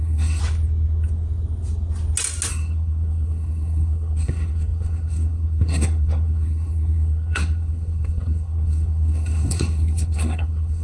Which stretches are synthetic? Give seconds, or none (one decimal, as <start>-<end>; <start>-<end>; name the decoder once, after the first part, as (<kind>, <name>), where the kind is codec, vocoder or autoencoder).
0.0-0.4 (codec, SNAC); 2.5-10.8

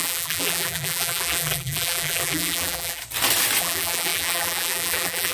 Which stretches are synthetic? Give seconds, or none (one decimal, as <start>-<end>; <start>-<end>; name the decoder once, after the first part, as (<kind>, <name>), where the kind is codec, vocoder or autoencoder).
0.0-3.0 (vocoder, BigVGAN v2); 3.6-5.3

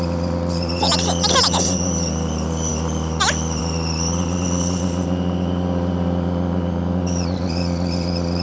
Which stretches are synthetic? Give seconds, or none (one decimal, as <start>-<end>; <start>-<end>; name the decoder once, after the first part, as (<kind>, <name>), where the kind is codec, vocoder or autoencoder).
none

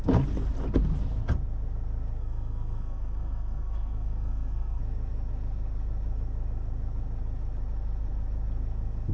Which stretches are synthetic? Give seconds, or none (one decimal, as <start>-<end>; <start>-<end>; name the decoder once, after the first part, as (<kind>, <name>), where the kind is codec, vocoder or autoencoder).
2.2-4.8 (codec, SNAC)

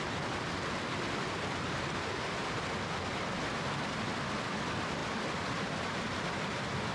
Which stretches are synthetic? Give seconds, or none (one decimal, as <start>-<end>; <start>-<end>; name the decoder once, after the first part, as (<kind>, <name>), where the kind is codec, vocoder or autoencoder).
none

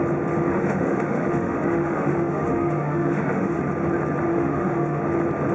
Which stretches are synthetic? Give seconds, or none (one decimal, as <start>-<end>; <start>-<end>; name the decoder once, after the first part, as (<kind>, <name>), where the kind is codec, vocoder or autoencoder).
0.5-3.6 (autoencoder, DAC-VAE); 4.3-5.0